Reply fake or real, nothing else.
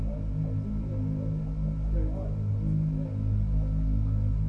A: real